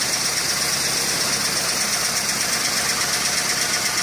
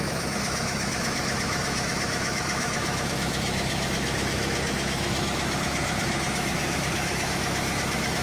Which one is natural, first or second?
first